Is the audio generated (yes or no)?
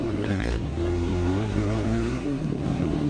yes